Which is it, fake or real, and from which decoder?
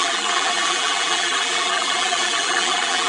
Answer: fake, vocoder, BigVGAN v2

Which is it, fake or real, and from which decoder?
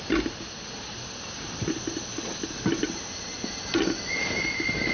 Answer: real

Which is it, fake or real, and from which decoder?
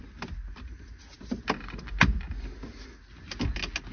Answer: real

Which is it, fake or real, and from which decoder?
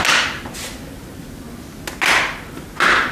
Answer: real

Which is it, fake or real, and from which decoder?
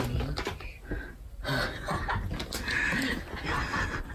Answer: real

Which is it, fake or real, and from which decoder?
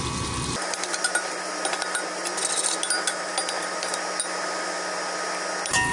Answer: real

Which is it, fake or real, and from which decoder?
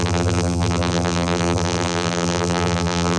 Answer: fake, vocoder, BigVGAN v2